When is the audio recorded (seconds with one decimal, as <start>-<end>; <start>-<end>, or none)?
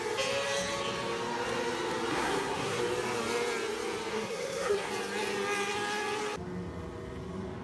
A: 0.0-2.1; 2.8-4.1; 4.9-7.6